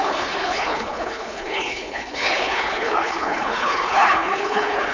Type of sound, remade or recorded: remade